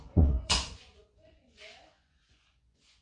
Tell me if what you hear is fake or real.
fake